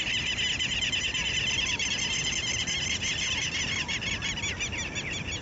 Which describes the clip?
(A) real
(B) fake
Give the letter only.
A